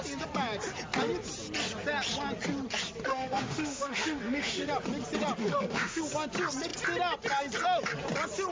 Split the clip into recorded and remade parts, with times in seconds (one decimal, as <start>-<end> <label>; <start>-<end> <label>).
0.0-3.1 recorded; 3.1-4.7 remade; 4.7-5.4 recorded; 5.4-6.0 remade; 6.0-8.5 recorded